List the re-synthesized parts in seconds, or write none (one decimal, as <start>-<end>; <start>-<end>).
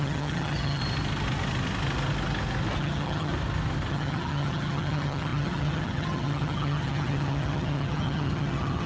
0.0-0.8; 2.8-3.3; 3.9-8.9